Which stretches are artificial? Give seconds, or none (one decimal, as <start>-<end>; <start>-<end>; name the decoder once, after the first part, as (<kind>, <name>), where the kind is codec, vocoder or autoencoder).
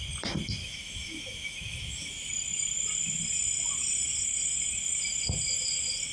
0.6-2.3 (autoencoder, DAC-VAE)